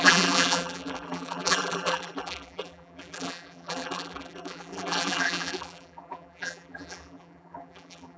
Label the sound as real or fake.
fake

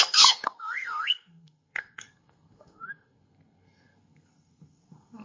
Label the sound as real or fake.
fake